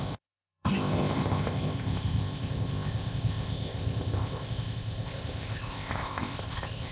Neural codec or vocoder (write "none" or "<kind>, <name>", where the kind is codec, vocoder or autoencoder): codec, ZipCodec